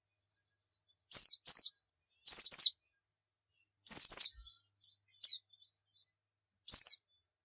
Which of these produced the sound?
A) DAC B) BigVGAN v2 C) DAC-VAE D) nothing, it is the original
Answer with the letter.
D